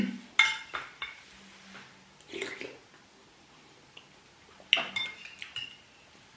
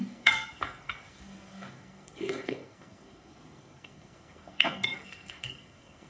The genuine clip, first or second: first